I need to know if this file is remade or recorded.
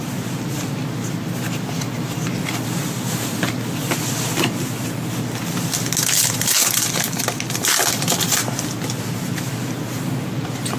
recorded